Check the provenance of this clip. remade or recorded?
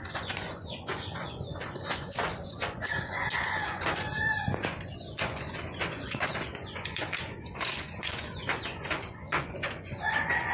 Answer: remade